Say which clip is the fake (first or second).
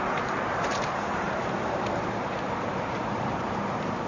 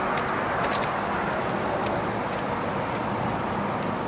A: first